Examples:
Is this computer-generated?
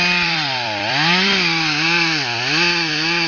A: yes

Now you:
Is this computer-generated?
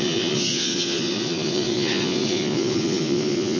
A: yes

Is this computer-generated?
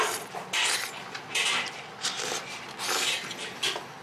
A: no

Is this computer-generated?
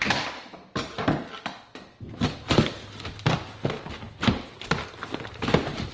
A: no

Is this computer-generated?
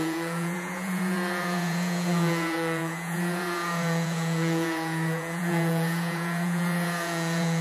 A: yes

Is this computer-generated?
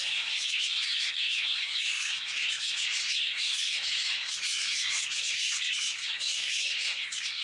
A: yes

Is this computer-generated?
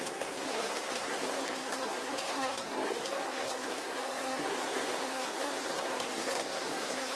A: yes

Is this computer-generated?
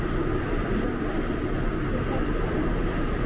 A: no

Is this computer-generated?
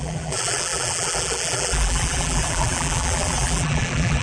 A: yes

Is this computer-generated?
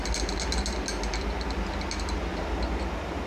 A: no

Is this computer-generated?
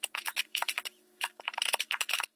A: yes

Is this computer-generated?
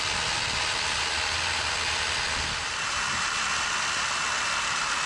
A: no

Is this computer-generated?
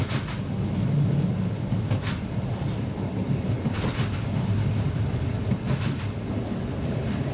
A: no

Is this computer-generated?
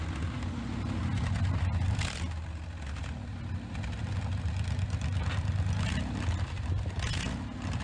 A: no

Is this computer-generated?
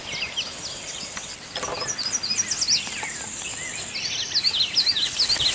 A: no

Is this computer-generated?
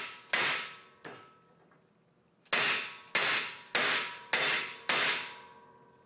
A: no